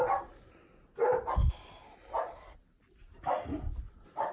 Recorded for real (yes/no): yes